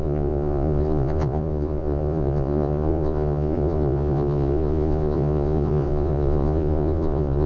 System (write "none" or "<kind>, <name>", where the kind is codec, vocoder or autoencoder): vocoder, Vocos